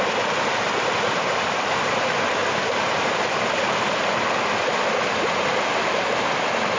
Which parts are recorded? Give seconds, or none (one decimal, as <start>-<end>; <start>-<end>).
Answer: 0.0-6.8